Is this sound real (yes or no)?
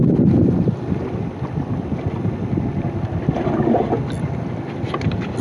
yes